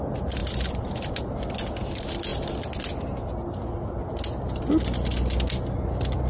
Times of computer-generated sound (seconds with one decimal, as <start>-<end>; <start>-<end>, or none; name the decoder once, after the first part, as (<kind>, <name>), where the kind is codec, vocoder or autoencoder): 0.4-1.2 (vocoder, BigVGAN v2)